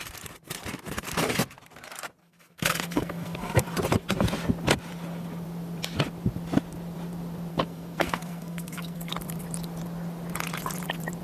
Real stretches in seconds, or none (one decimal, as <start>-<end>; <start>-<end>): 0.0-2.2; 3.6-7.5; 9.1-11.2